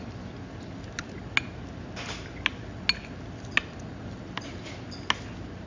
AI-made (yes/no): no